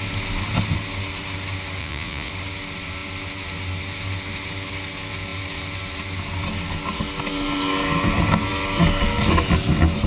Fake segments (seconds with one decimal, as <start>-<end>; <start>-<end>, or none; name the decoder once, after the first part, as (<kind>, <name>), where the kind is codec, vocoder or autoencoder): 1.8-2.3 (vocoder, Vocos)